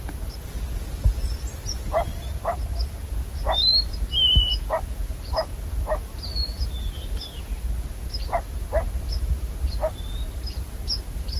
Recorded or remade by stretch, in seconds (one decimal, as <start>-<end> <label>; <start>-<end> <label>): 0.0-11.4 recorded